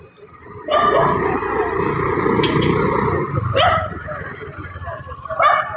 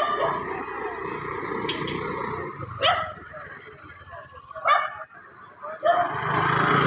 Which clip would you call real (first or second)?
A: second